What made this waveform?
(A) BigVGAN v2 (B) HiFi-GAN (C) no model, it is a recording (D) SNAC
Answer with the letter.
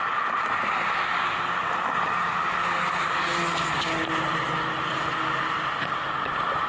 C